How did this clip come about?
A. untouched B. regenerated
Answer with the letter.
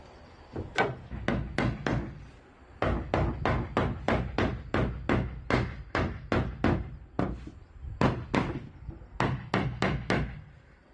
A